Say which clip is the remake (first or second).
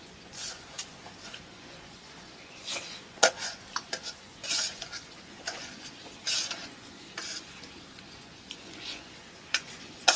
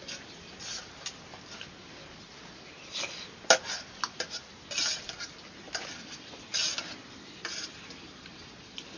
first